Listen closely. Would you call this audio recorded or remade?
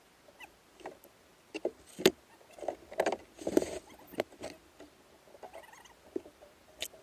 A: recorded